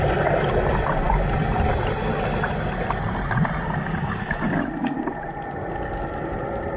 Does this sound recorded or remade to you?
recorded